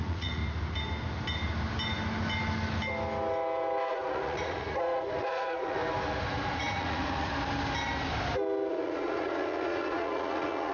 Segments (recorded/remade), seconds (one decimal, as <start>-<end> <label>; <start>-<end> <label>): 0.0-0.4 remade; 0.4-3.9 recorded; 3.9-5.8 remade; 5.8-6.5 recorded; 6.5-7.3 remade; 7.3-8.7 recorded; 8.7-10.7 remade